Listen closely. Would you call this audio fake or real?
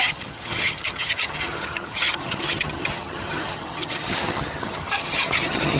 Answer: fake